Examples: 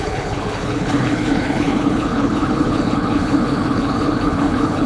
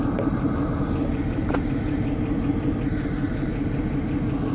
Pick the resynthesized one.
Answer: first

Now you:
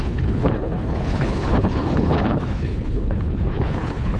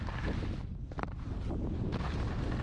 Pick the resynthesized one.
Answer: first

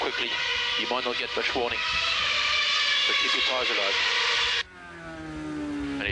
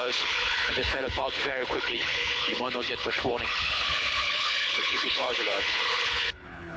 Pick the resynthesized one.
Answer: second